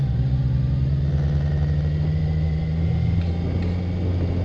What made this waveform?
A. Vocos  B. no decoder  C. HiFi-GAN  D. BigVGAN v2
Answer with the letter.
B